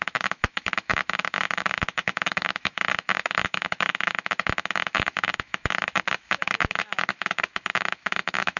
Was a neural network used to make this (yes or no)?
yes